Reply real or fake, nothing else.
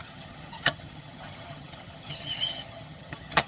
fake